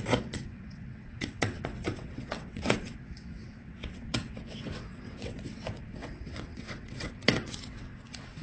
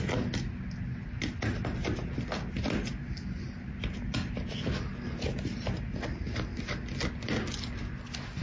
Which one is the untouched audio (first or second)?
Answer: second